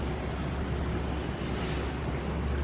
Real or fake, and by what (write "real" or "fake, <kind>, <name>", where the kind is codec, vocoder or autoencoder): real